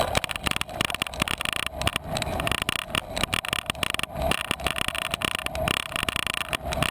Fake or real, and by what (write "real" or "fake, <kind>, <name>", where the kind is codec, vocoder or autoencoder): real